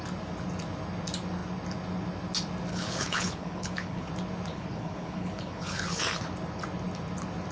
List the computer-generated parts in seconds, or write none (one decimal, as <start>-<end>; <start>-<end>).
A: 2.7-4.1; 4.5-6.0